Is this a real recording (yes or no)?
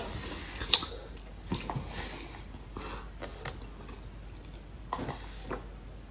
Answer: yes